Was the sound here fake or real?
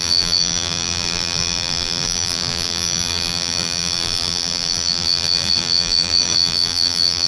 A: fake